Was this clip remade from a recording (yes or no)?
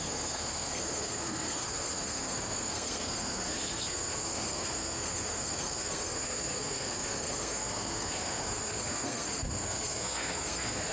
yes